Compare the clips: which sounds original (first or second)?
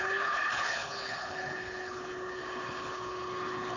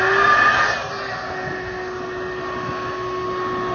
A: second